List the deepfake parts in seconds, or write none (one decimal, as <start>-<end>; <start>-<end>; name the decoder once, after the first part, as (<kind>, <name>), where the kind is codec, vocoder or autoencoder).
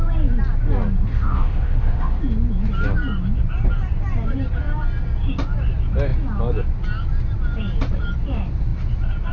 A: 1.1-2.2 (autoencoder, DAC-VAE)